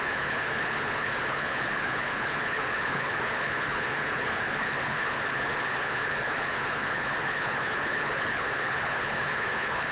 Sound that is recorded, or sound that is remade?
remade